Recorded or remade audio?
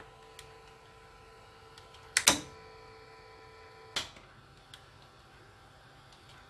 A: recorded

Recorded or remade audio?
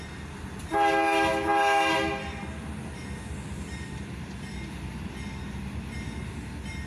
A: recorded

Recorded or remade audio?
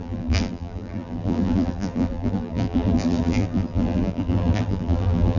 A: remade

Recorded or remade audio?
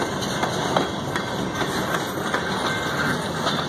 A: recorded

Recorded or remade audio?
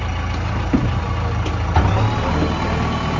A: recorded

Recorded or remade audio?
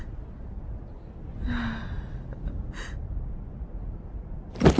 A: recorded